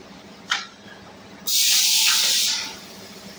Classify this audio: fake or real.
fake